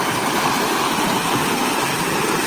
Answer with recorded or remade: remade